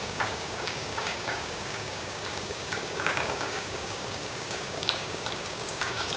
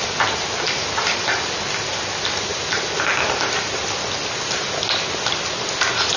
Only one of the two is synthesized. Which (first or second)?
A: first